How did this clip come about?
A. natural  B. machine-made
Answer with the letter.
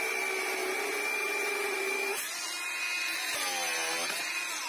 A